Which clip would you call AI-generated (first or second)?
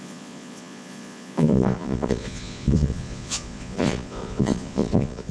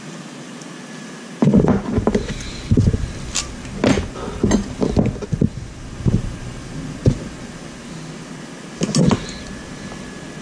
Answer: first